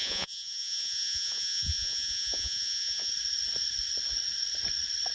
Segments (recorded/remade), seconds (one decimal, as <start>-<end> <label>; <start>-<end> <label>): 0.0-3.1 remade; 3.1-5.1 recorded